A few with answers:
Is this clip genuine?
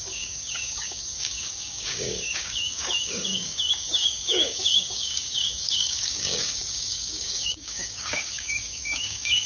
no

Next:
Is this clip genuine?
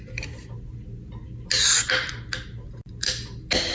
yes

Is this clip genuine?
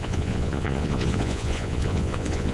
no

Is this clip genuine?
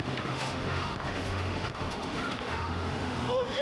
no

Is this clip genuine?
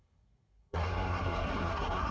no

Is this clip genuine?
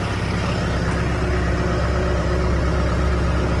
yes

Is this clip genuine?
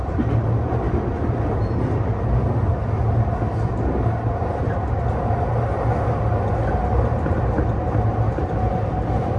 yes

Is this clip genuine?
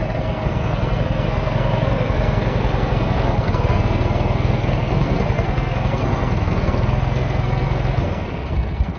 no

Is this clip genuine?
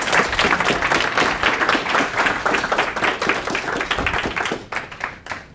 yes